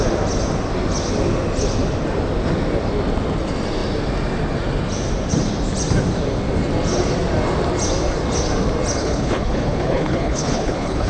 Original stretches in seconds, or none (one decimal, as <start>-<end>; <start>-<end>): 0.0-9.0